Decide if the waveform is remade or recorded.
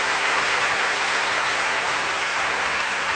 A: remade